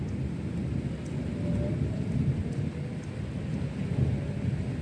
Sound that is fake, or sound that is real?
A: real